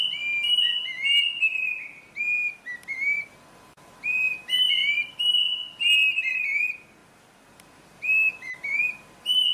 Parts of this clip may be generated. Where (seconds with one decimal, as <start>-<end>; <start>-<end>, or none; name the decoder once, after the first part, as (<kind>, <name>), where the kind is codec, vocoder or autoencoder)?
none